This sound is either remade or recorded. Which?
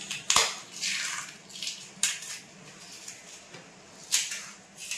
recorded